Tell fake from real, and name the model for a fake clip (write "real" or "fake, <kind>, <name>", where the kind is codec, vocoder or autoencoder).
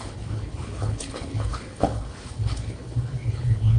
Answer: fake, codec, HILCodec